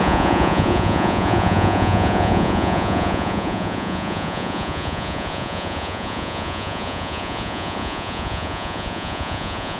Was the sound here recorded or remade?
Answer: remade